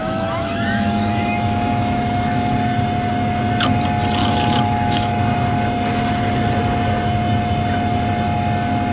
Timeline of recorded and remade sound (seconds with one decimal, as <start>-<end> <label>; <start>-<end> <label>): 0.0-2.5 remade; 2.5-4.2 recorded; 4.2-5.1 remade; 5.1-8.9 recorded